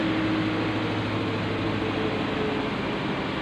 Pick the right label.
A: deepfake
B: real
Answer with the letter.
B